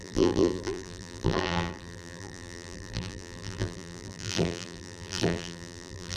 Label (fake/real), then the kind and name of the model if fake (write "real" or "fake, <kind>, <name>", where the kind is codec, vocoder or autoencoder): fake, vocoder, BigVGAN v2